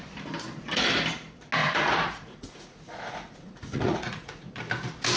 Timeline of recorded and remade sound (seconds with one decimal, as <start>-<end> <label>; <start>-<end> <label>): 0.0-1.6 recorded; 1.6-4.5 remade; 4.5-5.2 recorded